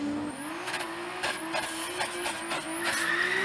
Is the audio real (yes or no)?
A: yes